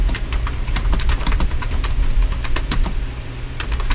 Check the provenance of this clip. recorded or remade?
remade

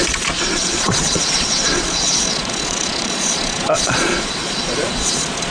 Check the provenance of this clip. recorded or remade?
remade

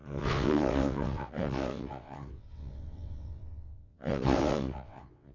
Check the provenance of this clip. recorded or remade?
remade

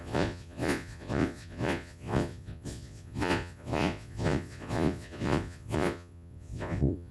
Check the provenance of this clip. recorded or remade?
remade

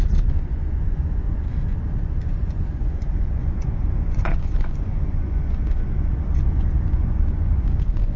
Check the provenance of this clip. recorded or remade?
remade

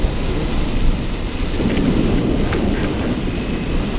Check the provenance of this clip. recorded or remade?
recorded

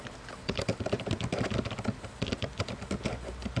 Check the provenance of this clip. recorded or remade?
remade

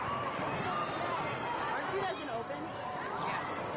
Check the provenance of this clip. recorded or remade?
recorded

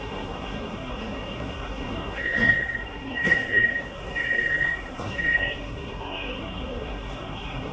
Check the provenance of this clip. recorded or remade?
remade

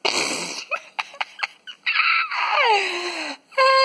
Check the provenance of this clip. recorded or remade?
recorded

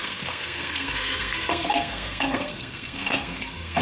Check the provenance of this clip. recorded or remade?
remade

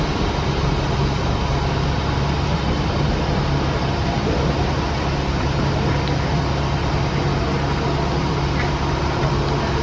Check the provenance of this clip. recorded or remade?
recorded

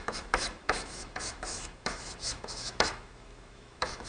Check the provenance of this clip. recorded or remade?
remade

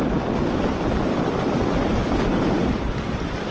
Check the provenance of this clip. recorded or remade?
recorded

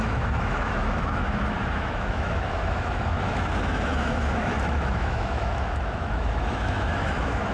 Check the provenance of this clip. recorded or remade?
remade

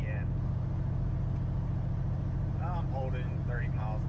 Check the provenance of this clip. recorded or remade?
recorded